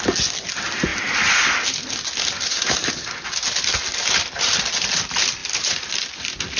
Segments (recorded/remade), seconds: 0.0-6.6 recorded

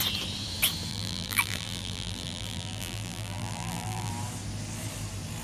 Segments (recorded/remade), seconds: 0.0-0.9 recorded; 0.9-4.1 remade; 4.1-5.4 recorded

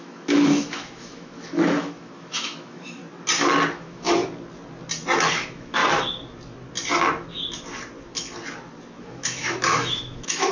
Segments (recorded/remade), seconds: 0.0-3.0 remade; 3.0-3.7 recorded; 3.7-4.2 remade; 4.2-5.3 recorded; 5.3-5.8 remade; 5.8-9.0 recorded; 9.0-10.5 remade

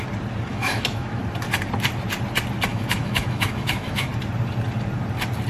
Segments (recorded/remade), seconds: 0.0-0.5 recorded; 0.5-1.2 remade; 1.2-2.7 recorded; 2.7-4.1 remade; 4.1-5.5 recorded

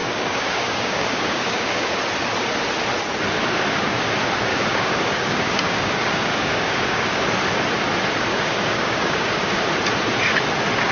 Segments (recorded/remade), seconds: 0.0-2.0 remade; 2.0-3.4 recorded; 3.4-4.0 remade; 4.0-4.5 recorded; 4.5-7.2 remade; 7.2-8.3 recorded; 8.3-9.6 remade; 9.6-10.9 recorded

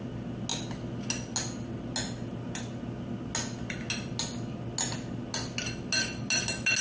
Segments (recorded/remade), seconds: 0.0-6.8 recorded

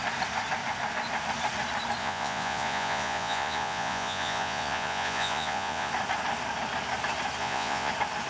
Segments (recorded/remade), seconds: 0.0-2.0 recorded; 2.0-5.9 remade; 5.9-7.4 recorded; 7.4-7.9 remade; 7.9-8.3 recorded